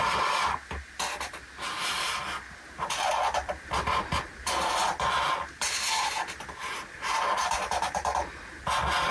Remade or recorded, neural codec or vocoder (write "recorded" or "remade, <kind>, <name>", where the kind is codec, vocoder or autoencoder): recorded